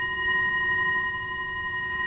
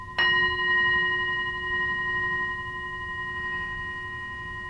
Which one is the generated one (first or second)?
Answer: first